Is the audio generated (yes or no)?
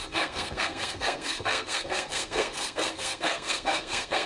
yes